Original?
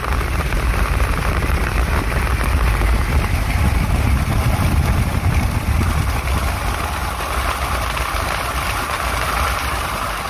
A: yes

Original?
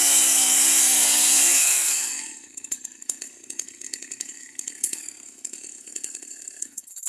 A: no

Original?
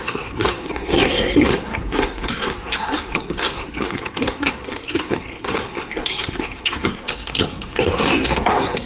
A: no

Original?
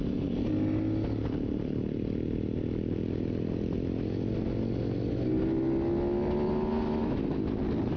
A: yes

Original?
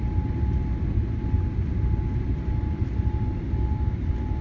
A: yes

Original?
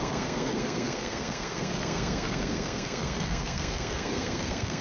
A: no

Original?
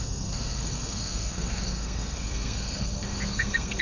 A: no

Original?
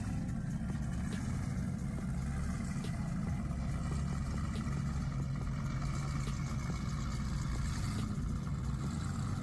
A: yes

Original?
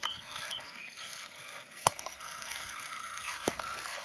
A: no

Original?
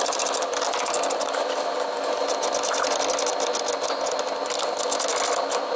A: yes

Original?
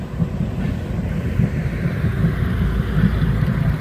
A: yes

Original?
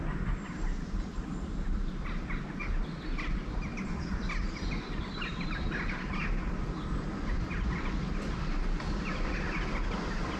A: yes